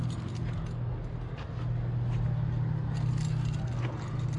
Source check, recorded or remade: recorded